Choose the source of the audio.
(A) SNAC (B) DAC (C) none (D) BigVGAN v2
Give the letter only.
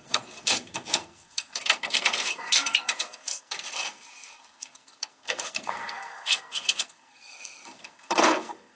A